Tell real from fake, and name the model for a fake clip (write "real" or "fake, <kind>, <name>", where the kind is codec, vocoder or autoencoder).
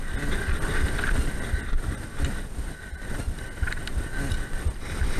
real